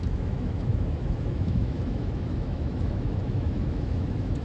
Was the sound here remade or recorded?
remade